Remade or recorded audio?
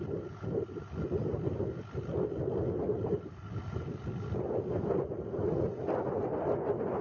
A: recorded